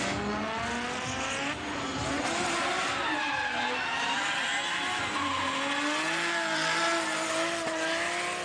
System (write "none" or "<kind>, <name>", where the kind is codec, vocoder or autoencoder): none